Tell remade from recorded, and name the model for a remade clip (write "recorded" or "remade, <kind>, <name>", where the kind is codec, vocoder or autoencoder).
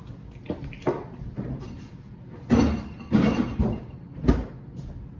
recorded